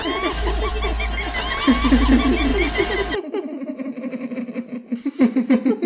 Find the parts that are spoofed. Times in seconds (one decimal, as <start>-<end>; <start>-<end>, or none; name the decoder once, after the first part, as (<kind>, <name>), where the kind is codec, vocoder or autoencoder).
none